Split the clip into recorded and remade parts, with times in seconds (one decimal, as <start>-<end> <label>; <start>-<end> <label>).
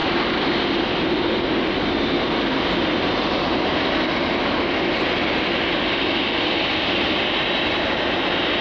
0.0-3.8 remade; 3.8-8.6 recorded